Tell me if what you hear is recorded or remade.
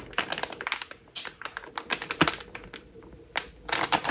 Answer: recorded